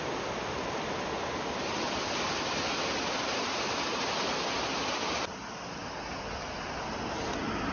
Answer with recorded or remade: recorded